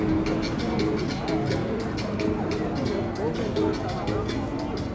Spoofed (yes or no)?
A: no